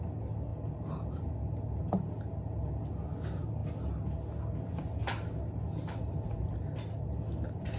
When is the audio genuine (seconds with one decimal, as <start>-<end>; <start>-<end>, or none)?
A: 0.0-7.8